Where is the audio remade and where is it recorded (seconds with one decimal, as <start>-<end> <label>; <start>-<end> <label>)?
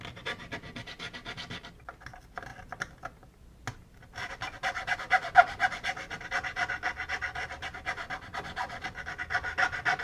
0.0-10.0 recorded